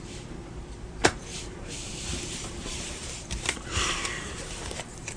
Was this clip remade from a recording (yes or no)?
yes